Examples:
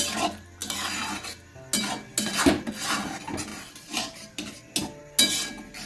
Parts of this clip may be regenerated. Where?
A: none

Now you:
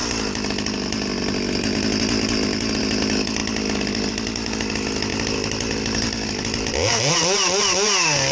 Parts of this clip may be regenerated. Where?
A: none

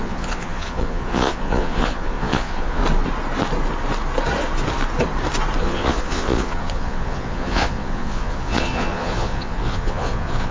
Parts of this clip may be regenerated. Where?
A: 0.0-2.8 (vocoder, Vocos); 5.6-10.5

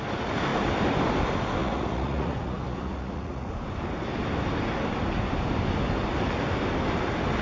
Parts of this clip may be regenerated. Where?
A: 1.6-3.5 (vocoder, Vocos)

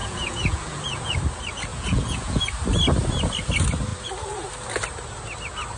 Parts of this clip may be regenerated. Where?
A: 0.0-1.2 (vocoder, Vocos); 1.7-2.4

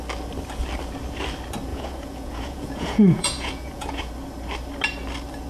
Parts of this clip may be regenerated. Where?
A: 1.7-4.1 (vocoder, Vocos)